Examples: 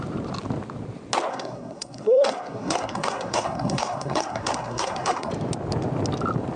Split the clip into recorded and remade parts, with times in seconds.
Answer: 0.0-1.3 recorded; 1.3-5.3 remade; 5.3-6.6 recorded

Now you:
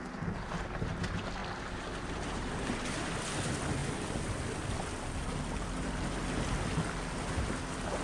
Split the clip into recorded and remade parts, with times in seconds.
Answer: 0.0-8.0 recorded

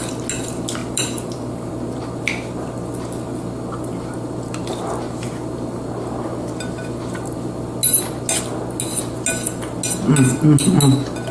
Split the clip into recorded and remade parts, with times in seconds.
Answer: 0.0-0.8 recorded; 0.8-1.7 remade; 1.7-11.3 recorded

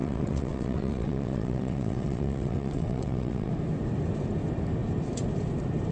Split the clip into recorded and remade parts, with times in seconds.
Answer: 0.0-3.5 remade; 3.5-5.9 recorded

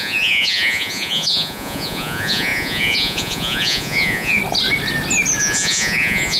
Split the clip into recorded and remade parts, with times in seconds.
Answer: 0.0-4.4 remade; 4.4-5.4 recorded; 5.4-6.4 remade